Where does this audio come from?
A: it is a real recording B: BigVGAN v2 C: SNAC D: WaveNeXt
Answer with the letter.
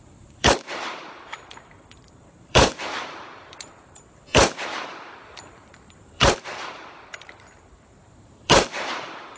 B